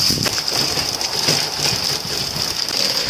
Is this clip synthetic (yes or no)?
no